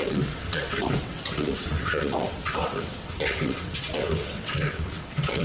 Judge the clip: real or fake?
fake